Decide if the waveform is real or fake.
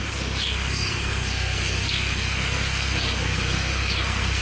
fake